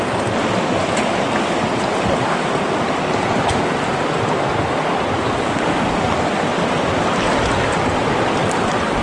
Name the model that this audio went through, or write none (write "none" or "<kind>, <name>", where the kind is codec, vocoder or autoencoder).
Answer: none